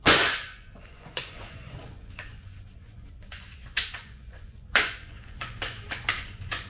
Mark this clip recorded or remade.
remade